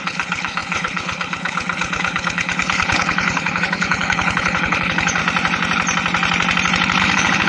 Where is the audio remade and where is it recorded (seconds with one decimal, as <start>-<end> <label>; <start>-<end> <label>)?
0.0-5.2 remade; 5.2-7.0 recorded; 7.0-7.5 remade